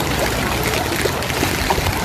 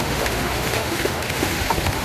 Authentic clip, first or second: first